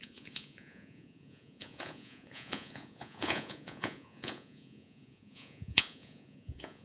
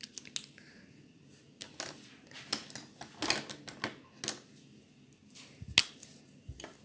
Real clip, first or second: second